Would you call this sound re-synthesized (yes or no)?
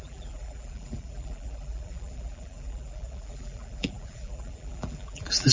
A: yes